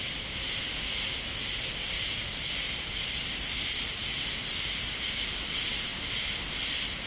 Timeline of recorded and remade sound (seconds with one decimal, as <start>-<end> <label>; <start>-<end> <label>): 0.0-7.1 recorded